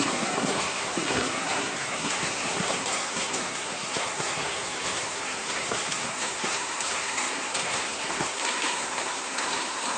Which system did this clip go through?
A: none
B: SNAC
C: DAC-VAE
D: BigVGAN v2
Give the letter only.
B